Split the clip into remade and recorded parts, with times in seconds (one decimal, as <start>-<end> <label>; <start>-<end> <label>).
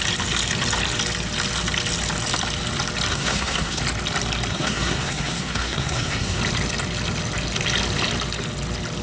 0.0-3.1 recorded; 3.1-3.8 remade; 3.8-4.5 recorded; 4.5-6.4 remade; 6.4-9.0 recorded